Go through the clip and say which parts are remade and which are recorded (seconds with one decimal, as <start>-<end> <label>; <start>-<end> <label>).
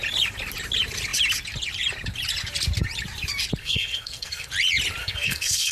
0.0-3.6 recorded; 3.6-4.5 remade; 4.5-5.0 recorded; 5.0-5.7 remade